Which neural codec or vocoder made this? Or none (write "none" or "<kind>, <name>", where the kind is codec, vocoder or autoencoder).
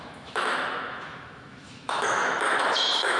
autoencoder, DAC-VAE